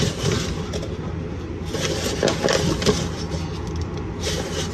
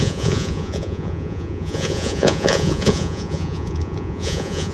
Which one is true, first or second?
first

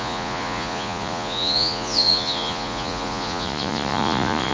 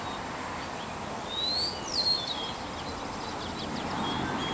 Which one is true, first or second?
second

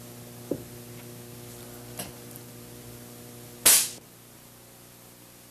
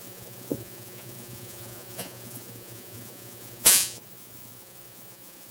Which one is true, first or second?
first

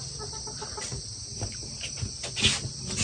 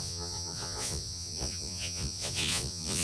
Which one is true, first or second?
first